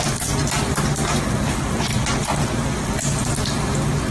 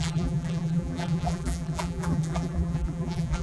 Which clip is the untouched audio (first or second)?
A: first